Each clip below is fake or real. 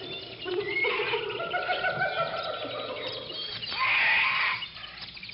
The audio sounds real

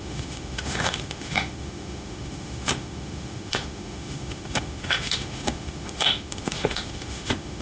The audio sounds fake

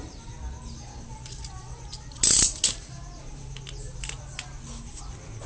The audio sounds real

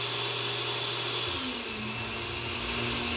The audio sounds real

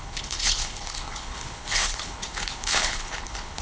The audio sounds fake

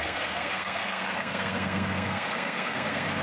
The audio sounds fake